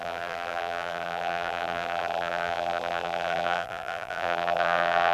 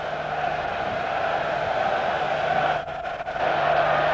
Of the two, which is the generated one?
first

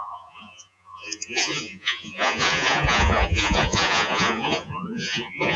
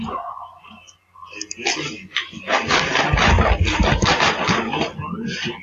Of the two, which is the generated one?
first